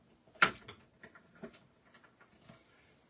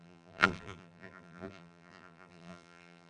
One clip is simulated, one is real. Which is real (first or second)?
first